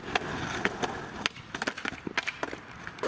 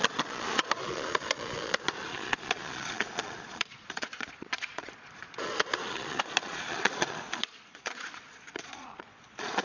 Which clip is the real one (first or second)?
first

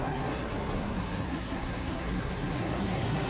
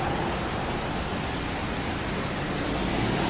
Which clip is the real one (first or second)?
second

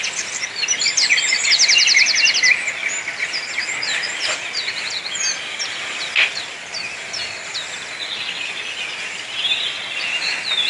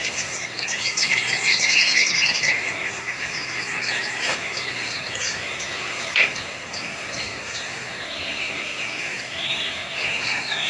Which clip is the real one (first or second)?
first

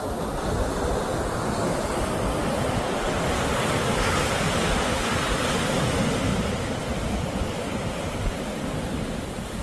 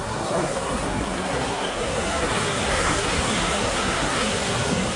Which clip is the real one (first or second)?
first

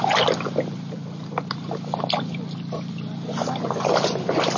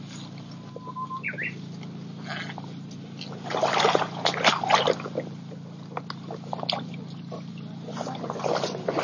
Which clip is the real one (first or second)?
second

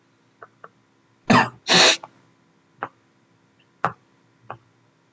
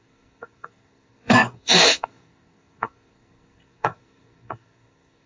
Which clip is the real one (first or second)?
first